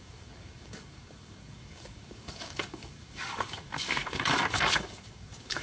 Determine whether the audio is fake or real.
fake